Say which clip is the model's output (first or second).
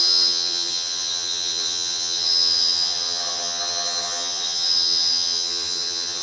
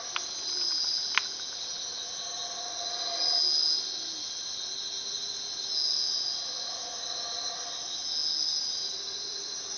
first